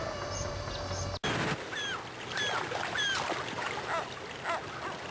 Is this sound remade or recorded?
recorded